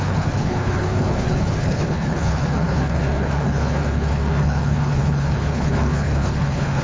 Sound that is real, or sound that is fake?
fake